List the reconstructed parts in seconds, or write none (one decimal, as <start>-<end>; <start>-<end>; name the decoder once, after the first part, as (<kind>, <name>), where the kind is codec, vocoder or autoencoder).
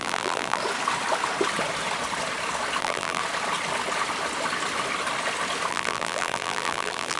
0.0-0.6 (vocoder, BigVGAN v2); 2.8-3.2; 5.7-7.2